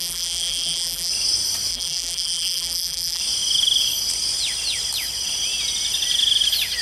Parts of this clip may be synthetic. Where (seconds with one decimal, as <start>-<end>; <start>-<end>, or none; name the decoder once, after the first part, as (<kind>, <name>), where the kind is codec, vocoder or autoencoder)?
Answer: 0.0-1.1 (vocoder, BigVGAN v2); 1.7-3.2